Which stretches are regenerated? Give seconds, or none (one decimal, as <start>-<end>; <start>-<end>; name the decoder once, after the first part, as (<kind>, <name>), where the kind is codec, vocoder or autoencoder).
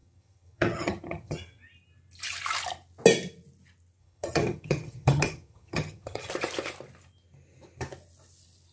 0.0-1.6 (vocoder, HiFi-GAN); 4.0-6.3